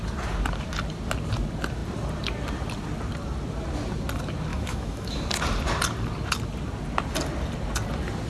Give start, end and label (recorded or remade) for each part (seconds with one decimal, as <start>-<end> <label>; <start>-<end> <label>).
0.0-4.5 recorded; 4.5-5.2 remade; 5.2-8.3 recorded